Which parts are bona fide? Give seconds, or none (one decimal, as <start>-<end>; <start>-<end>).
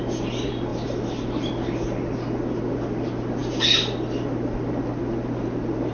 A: 0.0-5.9